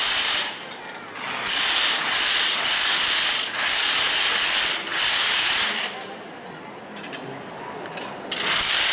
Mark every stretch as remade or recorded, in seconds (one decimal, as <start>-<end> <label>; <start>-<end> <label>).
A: 0.0-8.9 recorded